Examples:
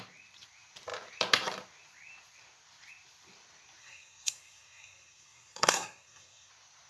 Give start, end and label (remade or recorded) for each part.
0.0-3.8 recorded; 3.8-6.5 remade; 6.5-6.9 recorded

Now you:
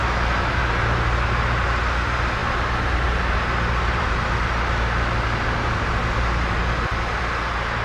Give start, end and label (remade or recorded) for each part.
0.0-7.8 recorded

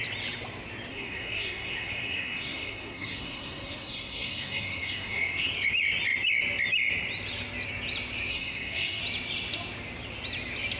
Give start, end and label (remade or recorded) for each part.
0.0-0.9 recorded; 0.9-5.5 remade; 5.5-8.3 recorded; 8.3-9.0 remade; 9.0-10.8 recorded

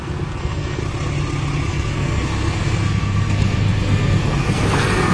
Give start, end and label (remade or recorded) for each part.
0.0-0.8 remade; 0.8-1.7 recorded; 1.7-5.1 remade

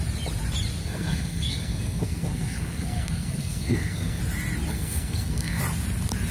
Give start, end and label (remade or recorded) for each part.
0.0-0.8 recorded; 0.8-4.2 remade; 4.2-4.7 recorded; 4.7-5.6 remade; 5.6-6.3 recorded